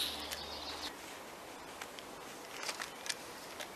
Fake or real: real